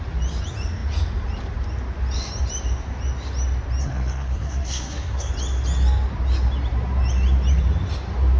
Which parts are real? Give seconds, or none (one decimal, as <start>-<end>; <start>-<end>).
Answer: 0.0-3.8; 5.3-8.4